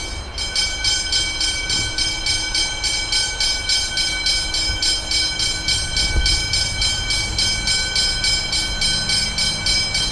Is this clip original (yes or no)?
yes